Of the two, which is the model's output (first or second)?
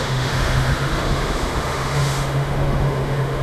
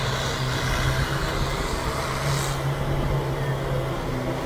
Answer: first